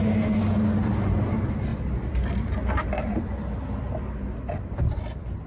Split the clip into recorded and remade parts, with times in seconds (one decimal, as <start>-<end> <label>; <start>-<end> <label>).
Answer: 0.0-1.7 recorded; 1.7-5.0 remade; 5.0-5.5 recorded